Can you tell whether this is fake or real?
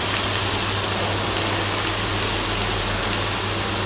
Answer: real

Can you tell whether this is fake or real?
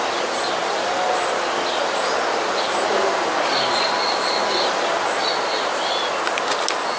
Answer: real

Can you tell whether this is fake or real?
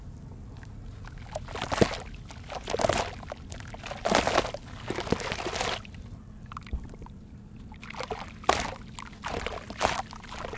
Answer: real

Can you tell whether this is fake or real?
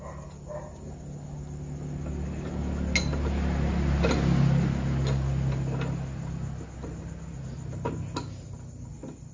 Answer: real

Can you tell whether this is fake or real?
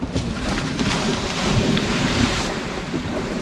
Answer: fake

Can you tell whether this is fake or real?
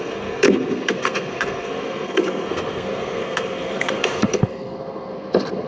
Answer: fake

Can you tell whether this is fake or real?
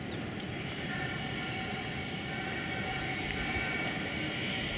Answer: real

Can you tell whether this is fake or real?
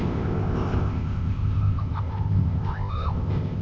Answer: fake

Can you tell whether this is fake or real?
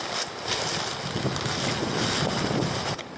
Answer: real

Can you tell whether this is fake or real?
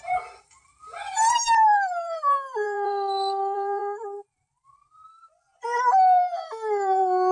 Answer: fake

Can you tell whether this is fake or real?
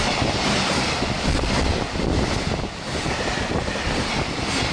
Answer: real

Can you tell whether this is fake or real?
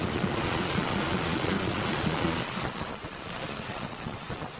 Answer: fake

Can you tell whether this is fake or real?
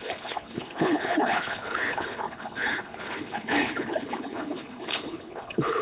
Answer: fake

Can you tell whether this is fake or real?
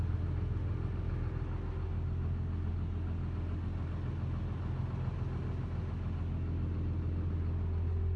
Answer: real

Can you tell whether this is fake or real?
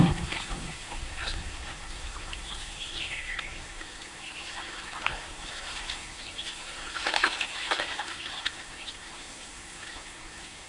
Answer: fake